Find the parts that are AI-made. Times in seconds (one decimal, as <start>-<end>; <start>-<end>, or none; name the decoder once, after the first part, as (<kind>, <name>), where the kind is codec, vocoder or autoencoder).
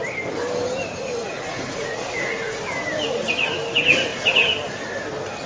1.2-2.6 (vocoder, Vocos)